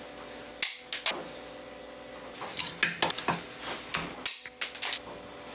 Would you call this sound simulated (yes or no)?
no